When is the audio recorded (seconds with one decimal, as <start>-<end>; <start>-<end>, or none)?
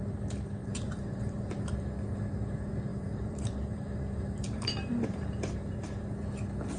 0.0-0.6; 1.5-2.9; 6.1-6.8